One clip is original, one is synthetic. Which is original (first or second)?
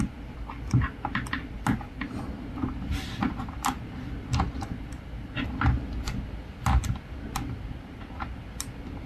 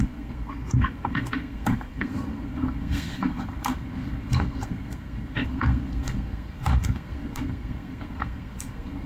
first